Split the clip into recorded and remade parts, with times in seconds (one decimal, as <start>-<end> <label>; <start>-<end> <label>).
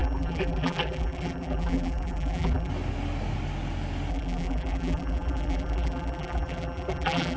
0.0-2.7 remade; 2.7-4.1 recorded; 4.1-7.4 remade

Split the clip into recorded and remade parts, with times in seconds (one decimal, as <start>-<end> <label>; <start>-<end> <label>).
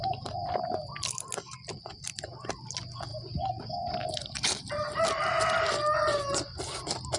0.0-7.2 recorded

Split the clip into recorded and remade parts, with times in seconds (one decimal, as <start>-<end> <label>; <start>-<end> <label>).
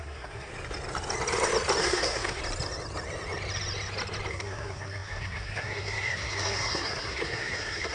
0.0-0.5 remade; 0.5-1.8 recorded; 1.8-2.4 remade; 2.4-4.3 recorded; 4.3-7.9 remade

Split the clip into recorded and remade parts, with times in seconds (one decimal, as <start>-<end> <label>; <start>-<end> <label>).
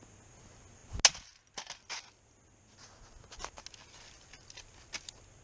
0.0-5.4 recorded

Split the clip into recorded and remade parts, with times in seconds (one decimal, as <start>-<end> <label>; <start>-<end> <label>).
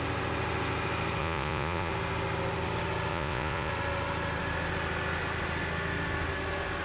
0.0-1.2 recorded; 1.2-1.9 remade; 1.9-3.1 recorded; 3.1-3.7 remade; 3.7-6.8 recorded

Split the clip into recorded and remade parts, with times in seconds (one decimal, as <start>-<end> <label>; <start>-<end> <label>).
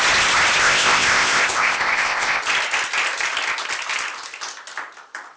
0.0-0.6 recorded; 0.6-2.4 remade; 2.4-5.4 recorded